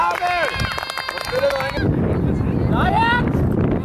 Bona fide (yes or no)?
yes